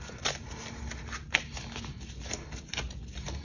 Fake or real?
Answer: real